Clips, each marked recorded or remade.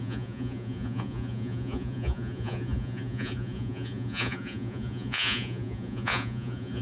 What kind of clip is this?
remade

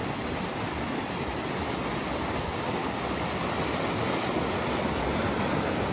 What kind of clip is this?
recorded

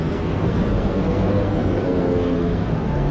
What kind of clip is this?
remade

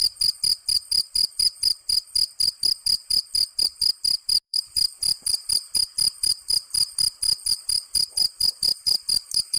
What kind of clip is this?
remade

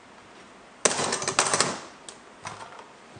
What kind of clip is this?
recorded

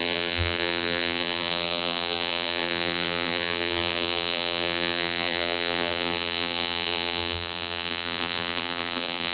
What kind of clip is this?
remade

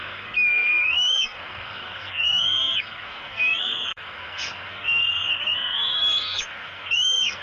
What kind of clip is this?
remade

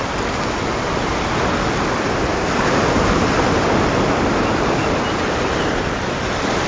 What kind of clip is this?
recorded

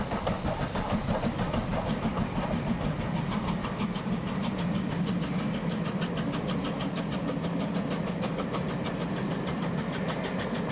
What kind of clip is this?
recorded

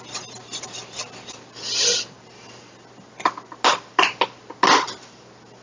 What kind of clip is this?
recorded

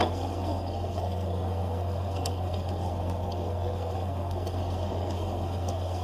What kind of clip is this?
remade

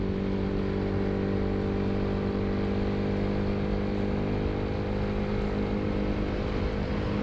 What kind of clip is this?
recorded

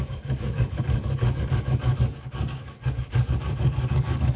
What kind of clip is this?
remade